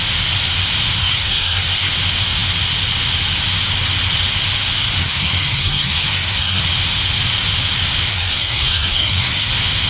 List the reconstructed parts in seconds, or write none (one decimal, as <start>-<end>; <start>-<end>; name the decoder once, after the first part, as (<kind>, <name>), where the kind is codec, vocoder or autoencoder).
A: 1.0-1.9 (codec, SNAC); 5.0-6.6; 8.1-9.5